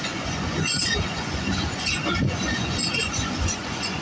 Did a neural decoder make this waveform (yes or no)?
yes